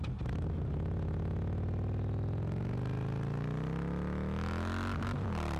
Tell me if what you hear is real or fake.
real